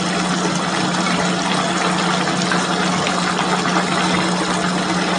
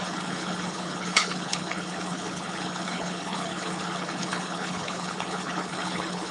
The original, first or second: first